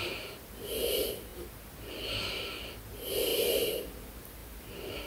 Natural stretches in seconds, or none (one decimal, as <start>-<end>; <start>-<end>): 0.0-5.1

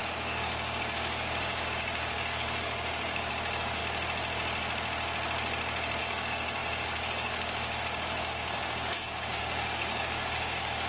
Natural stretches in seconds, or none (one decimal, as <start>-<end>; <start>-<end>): 3.8-6.0

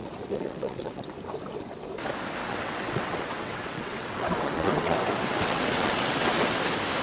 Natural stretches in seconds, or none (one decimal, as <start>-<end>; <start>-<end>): 1.1-2.4; 6.6-7.0

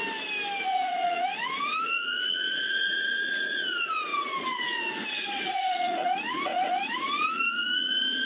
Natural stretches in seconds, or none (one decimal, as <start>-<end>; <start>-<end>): 0.0-0.6

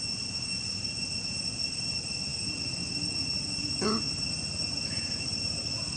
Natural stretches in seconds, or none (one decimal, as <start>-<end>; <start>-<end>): 0.0-6.0

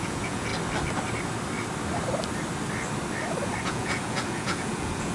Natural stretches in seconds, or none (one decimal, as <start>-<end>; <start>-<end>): 0.5-3.6

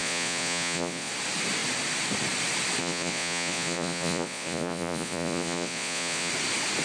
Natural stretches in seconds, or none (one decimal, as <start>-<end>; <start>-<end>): 1.1-2.8; 6.3-6.8

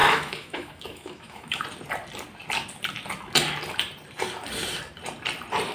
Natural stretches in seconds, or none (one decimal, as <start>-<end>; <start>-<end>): 1.6-5.7